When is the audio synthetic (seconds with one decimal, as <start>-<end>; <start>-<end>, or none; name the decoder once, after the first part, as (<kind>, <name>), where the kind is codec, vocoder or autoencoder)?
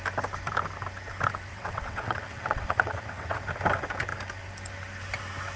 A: 1.5-3.4 (vocoder, WaveNeXt)